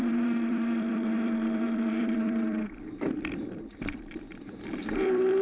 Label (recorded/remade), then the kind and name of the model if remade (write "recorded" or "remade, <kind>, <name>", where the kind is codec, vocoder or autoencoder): remade, vocoder, BigVGAN v2